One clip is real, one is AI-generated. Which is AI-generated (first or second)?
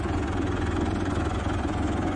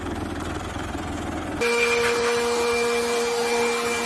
first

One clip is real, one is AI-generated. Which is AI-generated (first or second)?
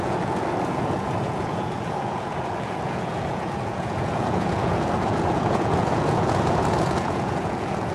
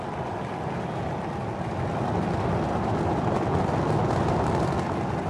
first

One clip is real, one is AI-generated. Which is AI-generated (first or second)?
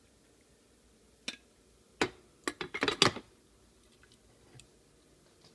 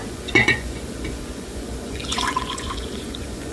second